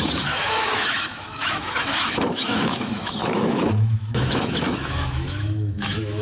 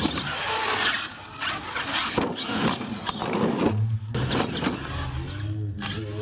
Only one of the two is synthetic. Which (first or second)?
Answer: first